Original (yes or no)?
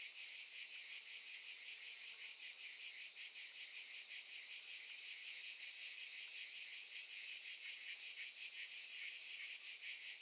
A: no